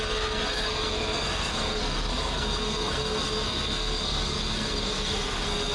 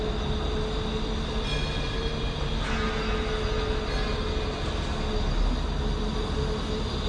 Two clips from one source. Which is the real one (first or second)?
second